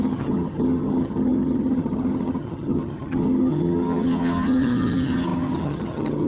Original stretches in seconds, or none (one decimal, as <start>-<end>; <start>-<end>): none